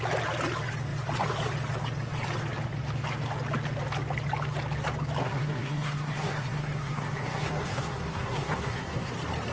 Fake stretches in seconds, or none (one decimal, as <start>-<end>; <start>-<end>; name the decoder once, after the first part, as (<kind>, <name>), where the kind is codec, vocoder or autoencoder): 5.2-9.1 (codec, SNAC)